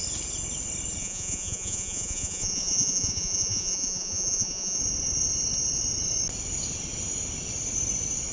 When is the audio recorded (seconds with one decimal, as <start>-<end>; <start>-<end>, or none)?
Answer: 0.0-1.0; 4.8-8.3